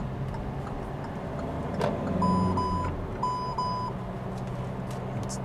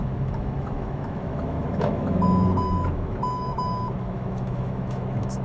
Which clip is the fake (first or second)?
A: second